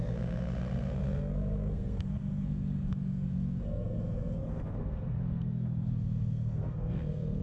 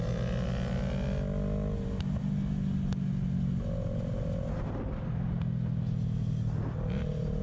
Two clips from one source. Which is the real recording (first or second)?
second